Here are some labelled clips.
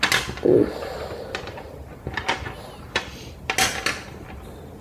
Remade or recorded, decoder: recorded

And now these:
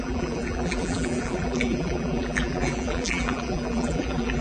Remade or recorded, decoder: remade, vocoder, BigVGAN v2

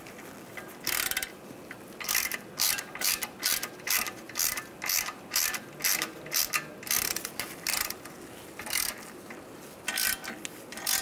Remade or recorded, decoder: recorded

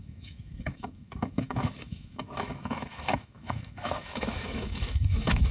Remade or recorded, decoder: remade, autoencoder, DAC-VAE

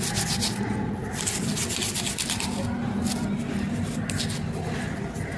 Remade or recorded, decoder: recorded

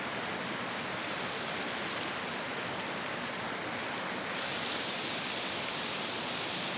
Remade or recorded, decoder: recorded